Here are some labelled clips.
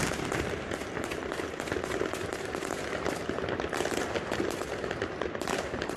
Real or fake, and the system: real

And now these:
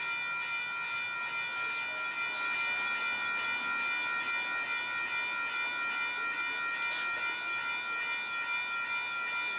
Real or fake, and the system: real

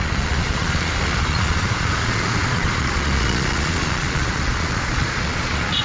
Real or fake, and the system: fake, vocoder, Vocos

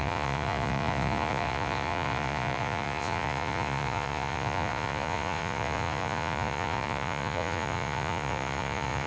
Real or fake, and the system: fake, vocoder, Vocos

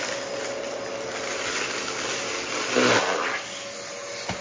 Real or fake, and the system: real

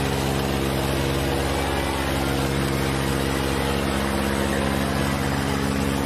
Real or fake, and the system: real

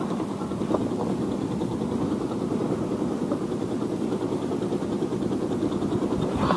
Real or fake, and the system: real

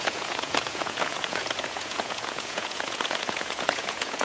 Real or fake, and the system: fake, vocoder, Vocos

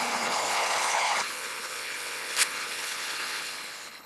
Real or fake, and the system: fake, codec, HILCodec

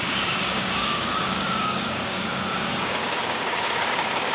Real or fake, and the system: fake, codec, DAC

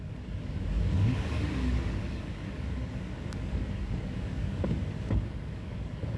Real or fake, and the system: fake, codec, DAC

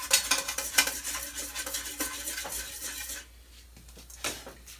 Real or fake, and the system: real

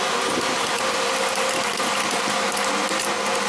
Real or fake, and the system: real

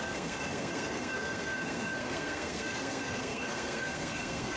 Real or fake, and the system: fake, codec, SNAC